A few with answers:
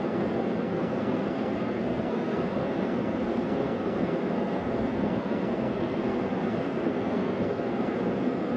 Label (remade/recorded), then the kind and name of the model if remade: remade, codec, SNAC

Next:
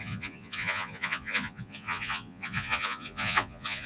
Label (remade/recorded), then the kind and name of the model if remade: remade, vocoder, Vocos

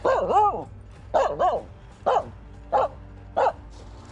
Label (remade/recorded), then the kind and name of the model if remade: recorded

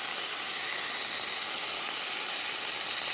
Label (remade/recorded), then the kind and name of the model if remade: recorded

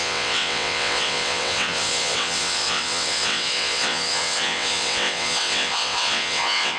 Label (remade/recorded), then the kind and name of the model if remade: remade, vocoder, WaveNeXt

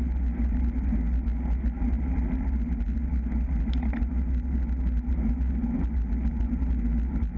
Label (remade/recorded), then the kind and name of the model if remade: recorded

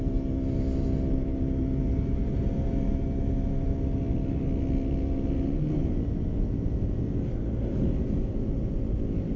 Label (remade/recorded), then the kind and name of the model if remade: recorded